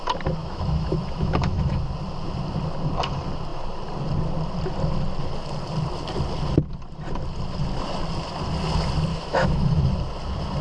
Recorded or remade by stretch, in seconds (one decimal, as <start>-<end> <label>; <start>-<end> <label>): 0.0-0.4 recorded; 0.4-1.8 remade; 1.8-9.1 recorded; 9.1-9.8 remade; 9.8-10.6 recorded